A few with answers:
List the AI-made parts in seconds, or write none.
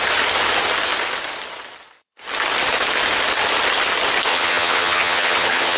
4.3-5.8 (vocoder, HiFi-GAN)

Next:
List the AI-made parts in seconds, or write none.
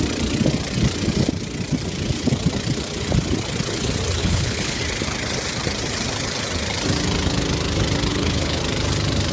4.2-4.8 (codec, HILCodec); 8.1-8.6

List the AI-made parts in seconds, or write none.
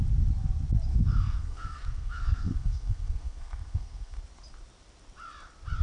0.9-4.2 (codec, SNAC)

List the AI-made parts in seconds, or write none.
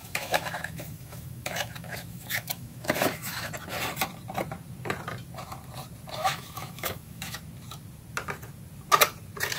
0.0-3.5 (autoencoder, DAC-VAE); 6.2-7.4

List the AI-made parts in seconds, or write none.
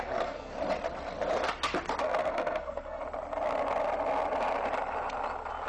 0.0-0.5 (codec, SNAC); 2.0-3.0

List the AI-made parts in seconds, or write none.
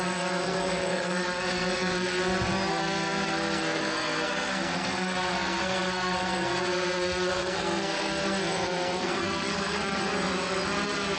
0.0-2.2 (codec, SNAC); 2.7-10.1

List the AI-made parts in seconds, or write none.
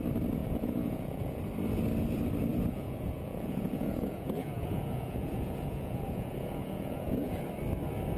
0.4-1.4 (vocoder, Vocos); 2.5-7.4